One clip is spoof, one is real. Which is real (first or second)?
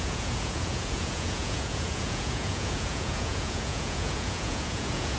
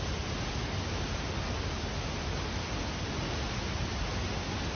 second